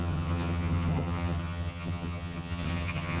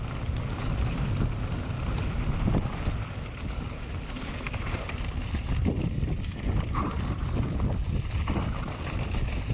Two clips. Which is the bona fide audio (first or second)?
second